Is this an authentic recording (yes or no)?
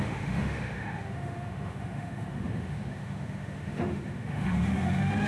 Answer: no